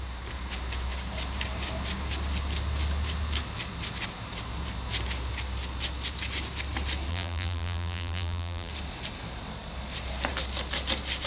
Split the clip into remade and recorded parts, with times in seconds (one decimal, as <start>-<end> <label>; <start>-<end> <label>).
0.0-7.1 recorded; 7.1-8.7 remade; 8.7-11.3 recorded